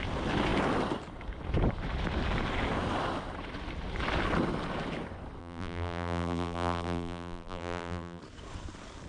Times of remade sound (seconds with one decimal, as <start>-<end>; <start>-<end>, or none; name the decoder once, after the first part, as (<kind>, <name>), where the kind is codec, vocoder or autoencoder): 5.4-8.2 (vocoder, BigVGAN v2)